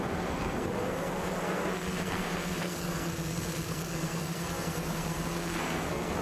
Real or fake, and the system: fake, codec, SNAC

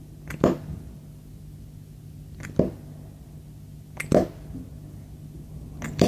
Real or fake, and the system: real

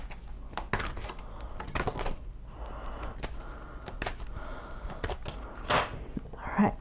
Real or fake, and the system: real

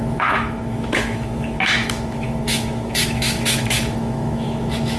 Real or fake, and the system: fake, autoencoder, DAC-VAE